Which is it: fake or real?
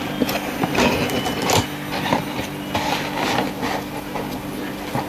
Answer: real